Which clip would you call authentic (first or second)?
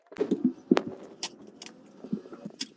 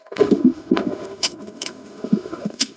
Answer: first